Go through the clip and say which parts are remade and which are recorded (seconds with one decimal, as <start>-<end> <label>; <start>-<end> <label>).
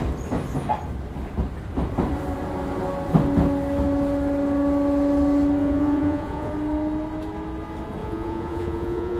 0.0-5.6 recorded; 5.6-6.5 remade; 6.5-8.0 recorded; 8.0-9.2 remade